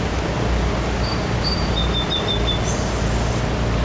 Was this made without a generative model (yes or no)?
yes